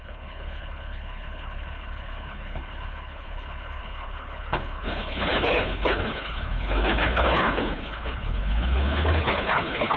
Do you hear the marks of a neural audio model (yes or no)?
yes